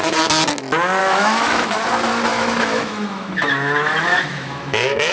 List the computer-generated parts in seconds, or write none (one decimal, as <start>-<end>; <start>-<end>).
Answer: 1.0-1.7; 2.3-5.1